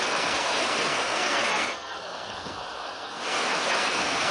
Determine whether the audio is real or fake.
fake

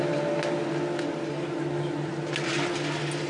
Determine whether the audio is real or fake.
real